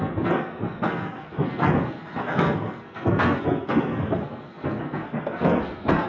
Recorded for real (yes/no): no